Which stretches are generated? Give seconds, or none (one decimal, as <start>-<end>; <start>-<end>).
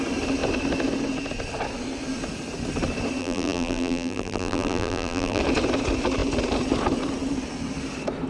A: 3.2-5.4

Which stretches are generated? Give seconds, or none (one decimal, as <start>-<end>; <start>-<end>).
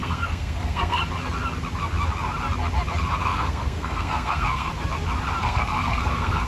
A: 0.0-1.0; 3.2-4.7; 5.4-6.5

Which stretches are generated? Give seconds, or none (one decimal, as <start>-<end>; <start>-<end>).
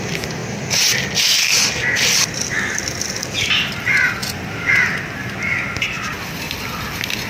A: none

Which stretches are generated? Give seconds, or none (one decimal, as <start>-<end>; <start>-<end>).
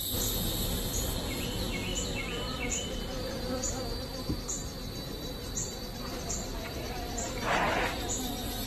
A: 5.1-7.3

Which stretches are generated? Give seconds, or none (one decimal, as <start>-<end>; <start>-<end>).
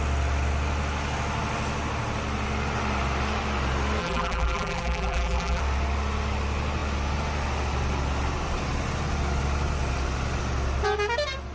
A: 4.0-5.6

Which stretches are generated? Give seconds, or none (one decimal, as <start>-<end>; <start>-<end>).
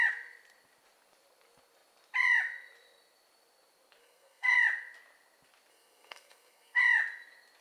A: 4.0-4.6; 5.7-6.8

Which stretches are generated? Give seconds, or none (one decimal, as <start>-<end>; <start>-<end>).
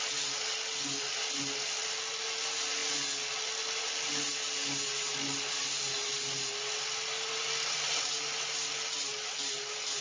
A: none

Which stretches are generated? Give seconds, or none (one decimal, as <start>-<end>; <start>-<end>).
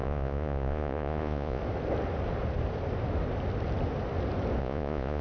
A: 0.0-1.6; 4.6-5.2